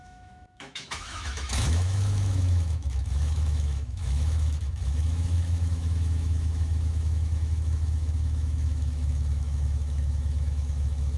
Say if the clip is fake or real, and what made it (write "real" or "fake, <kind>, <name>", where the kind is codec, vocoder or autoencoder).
fake, autoencoder, DAC-VAE